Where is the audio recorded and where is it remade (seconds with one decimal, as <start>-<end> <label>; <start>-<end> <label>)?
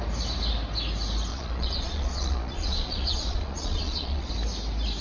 0.0-1.3 recorded; 1.3-4.3 remade; 4.3-5.0 recorded